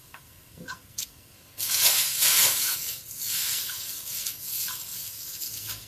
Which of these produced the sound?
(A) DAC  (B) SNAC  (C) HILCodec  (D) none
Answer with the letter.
B